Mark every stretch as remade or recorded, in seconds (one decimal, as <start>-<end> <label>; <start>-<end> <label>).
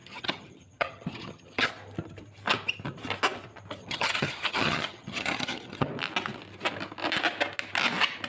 0.0-1.7 remade; 1.7-3.8 recorded; 3.8-5.9 remade; 5.9-8.3 recorded